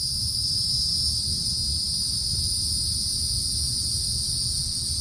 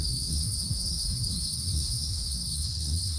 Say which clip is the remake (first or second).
second